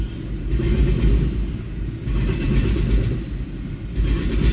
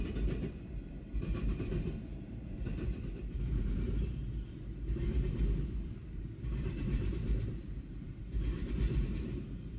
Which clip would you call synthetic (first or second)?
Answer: second